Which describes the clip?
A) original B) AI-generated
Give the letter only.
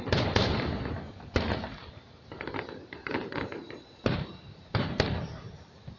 B